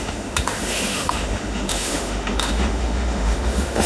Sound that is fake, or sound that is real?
fake